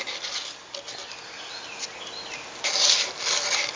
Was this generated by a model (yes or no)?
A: no